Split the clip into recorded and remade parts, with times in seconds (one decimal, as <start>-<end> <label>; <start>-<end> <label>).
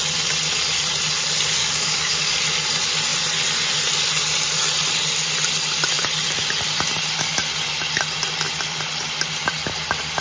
0.0-1.6 recorded; 1.6-2.2 remade; 2.2-10.2 recorded